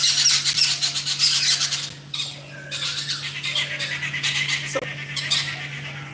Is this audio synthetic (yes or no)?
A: no